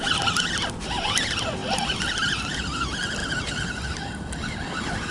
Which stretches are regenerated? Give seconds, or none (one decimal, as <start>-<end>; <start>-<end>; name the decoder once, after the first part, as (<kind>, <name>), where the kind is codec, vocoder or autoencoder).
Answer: none